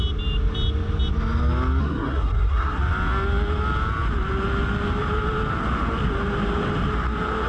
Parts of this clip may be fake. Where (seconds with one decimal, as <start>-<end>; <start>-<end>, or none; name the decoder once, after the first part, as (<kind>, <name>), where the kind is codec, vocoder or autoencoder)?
1.8-2.8 (codec, SNAC)